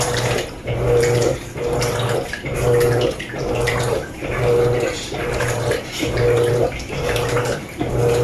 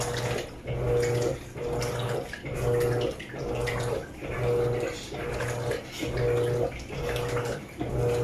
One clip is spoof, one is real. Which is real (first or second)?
second